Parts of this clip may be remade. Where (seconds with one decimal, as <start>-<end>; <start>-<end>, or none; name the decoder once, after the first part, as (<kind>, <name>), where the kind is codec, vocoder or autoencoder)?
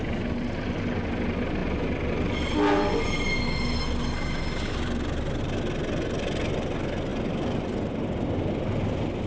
none